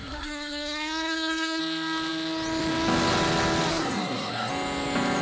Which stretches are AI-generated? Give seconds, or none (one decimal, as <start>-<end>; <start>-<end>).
0.0-1.6; 3.7-4.5